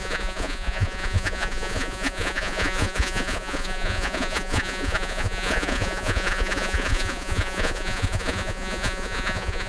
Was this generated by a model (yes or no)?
yes